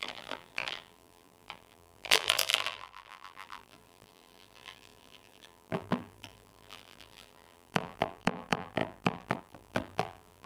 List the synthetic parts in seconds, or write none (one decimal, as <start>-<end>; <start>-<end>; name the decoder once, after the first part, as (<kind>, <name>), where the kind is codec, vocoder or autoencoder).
0.0-10.5 (vocoder, BigVGAN v2)